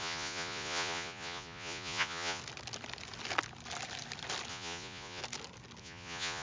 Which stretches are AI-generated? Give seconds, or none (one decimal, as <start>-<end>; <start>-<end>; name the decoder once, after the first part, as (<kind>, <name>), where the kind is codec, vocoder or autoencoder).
0.0-2.4 (vocoder, Vocos); 4.5-5.2; 5.8-6.4